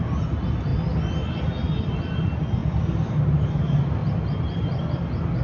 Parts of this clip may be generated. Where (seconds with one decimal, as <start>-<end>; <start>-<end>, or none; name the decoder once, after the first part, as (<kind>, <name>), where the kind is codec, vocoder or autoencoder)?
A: none